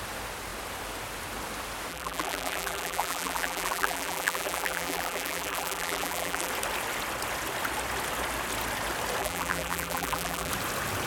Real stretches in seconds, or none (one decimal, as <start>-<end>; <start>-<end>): 0.0-1.9; 6.5-9.2; 10.5-11.1